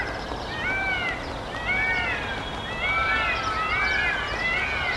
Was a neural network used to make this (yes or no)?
no